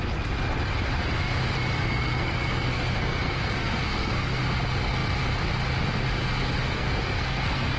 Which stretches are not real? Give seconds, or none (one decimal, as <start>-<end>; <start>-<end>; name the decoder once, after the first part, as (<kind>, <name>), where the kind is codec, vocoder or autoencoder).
1.8-4.4 (codec, SNAC); 6.6-7.8